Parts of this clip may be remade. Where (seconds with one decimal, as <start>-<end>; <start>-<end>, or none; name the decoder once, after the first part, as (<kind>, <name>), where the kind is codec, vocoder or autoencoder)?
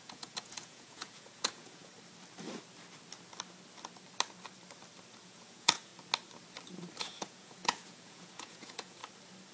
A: 0.0-1.9 (vocoder, Vocos); 5.2-5.9; 7.0-9.0